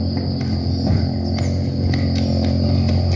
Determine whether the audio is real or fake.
real